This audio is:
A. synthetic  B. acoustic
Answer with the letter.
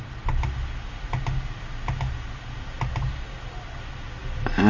B